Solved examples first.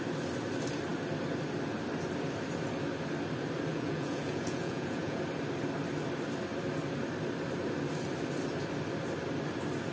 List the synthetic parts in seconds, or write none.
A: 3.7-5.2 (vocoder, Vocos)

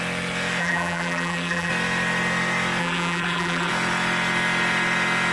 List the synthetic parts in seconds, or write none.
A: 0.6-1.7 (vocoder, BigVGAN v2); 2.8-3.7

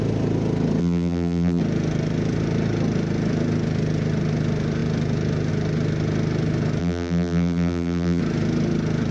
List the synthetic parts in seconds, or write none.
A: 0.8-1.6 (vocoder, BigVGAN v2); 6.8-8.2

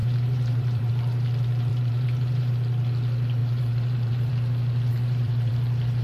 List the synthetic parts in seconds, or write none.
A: 0.0-0.9 (vocoder, BigVGAN v2); 1.7-2.5; 3.4-4.3; 4.9-5.5

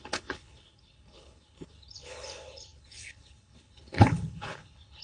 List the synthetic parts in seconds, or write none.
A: 0.0-5.0 (codec, HILCodec)